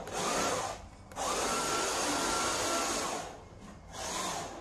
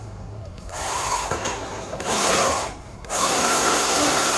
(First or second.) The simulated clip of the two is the second